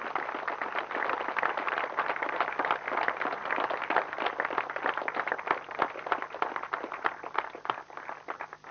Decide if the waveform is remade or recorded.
recorded